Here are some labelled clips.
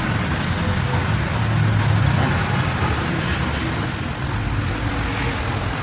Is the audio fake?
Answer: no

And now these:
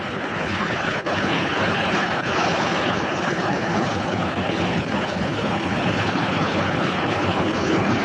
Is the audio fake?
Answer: yes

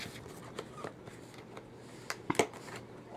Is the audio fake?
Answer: no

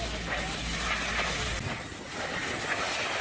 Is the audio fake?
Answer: no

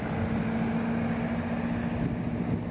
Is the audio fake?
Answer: no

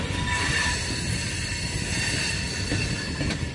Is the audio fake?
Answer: no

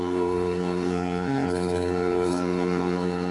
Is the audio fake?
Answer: yes